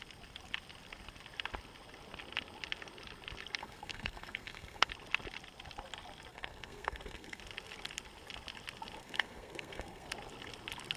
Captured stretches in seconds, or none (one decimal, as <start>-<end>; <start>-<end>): 0.0-3.6; 4.9-6.3; 7.4-9.0; 10.1-11.0